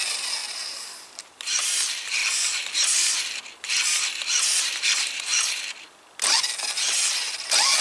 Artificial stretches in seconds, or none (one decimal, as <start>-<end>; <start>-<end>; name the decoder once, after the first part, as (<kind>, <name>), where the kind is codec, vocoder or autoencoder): 0.0-2.2 (vocoder, BigVGAN v2); 4.6-5.3